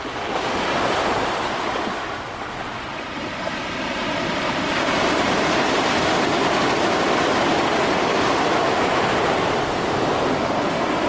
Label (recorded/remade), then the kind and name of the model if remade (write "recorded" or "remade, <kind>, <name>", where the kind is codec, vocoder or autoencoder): remade, vocoder, BigVGAN v2